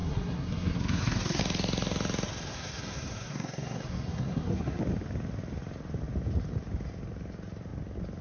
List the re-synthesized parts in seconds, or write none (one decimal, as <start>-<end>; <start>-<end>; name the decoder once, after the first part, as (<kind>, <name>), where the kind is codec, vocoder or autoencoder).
0.0-1.4 (codec, SNAC); 2.5-4.8